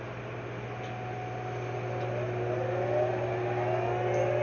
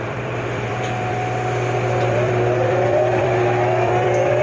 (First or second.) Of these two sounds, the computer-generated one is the second